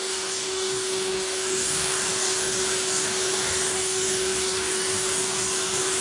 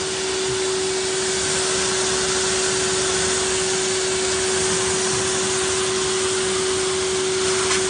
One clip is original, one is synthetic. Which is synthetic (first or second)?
first